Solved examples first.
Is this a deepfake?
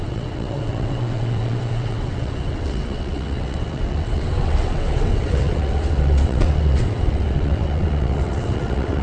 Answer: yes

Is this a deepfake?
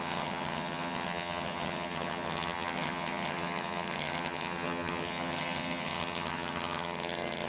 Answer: yes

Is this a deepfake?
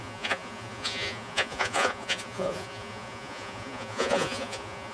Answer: yes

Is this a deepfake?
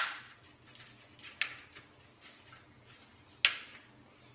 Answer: no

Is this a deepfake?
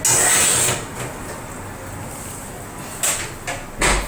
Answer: no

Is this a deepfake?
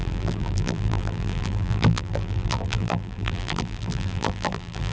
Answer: yes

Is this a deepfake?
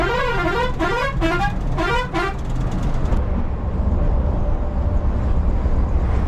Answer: no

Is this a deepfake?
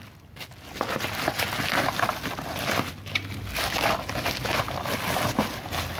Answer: no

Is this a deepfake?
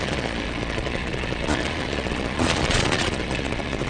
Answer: yes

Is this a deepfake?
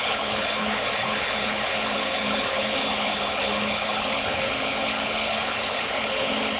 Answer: yes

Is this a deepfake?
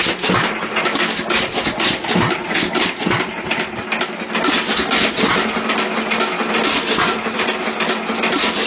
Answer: no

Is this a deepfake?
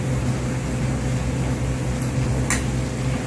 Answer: no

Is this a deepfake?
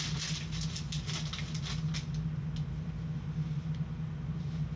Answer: no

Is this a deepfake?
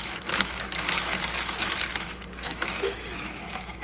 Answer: yes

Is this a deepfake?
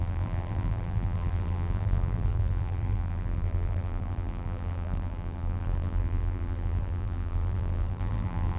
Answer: yes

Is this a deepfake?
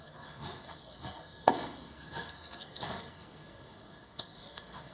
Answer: yes